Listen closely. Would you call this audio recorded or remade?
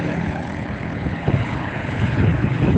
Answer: remade